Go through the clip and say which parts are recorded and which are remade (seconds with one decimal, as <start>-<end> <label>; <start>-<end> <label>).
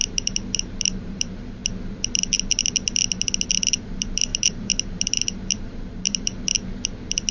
0.0-1.6 remade; 1.6-3.8 recorded; 3.8-6.3 remade; 6.3-7.3 recorded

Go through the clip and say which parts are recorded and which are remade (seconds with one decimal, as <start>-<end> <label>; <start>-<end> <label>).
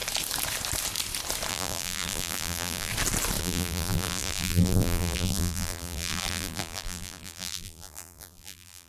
0.0-1.5 recorded; 1.5-2.9 remade; 2.9-3.4 recorded; 3.4-8.9 remade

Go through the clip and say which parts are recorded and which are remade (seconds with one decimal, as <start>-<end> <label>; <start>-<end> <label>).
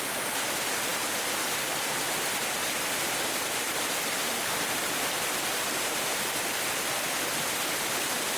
0.0-8.4 remade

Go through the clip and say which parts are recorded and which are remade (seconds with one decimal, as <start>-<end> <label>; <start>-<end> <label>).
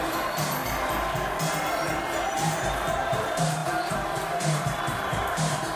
0.0-0.6 remade; 0.6-1.8 recorded; 1.8-5.8 remade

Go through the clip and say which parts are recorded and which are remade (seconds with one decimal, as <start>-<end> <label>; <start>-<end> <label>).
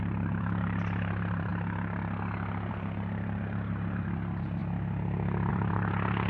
0.0-1.5 remade; 1.5-2.7 recorded; 2.7-4.6 remade; 4.6-5.5 recorded; 5.5-6.3 remade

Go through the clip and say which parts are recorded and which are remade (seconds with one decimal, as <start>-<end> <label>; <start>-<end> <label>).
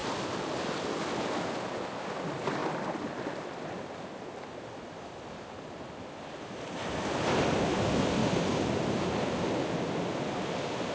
0.0-1.0 remade; 1.0-2.6 recorded; 2.6-6.9 remade; 6.9-8.2 recorded; 8.2-9.4 remade; 9.4-10.9 recorded